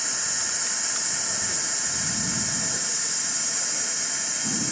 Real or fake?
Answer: real